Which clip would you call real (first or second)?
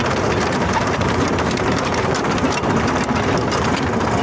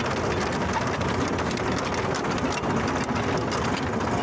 second